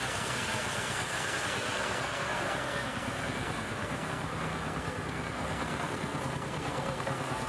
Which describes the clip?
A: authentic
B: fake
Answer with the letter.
B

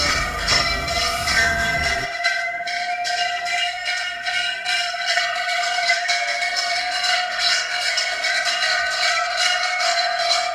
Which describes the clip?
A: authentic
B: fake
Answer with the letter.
B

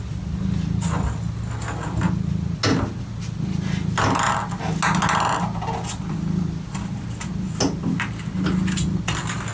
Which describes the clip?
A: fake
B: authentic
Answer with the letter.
B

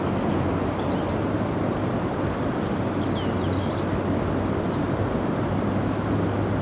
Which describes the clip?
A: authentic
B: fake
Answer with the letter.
A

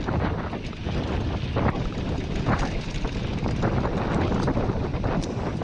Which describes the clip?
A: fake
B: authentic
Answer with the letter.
B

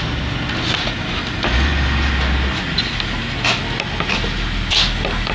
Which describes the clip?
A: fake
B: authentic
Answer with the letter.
B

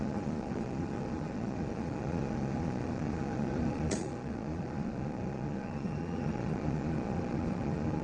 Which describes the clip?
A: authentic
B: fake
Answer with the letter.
B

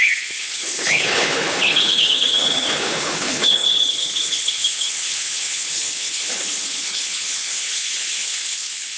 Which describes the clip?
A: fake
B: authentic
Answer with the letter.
A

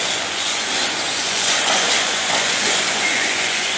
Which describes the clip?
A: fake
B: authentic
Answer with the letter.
A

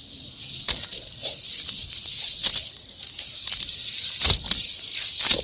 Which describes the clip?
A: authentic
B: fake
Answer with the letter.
A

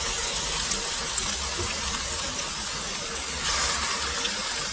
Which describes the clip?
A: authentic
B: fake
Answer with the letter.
A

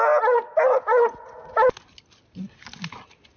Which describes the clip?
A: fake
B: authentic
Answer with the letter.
B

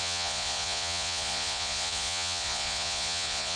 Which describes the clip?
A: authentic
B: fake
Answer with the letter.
B